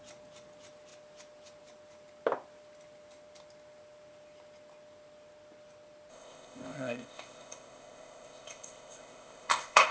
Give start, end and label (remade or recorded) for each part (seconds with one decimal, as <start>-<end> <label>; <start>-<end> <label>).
0.0-6.1 recorded; 6.1-9.9 remade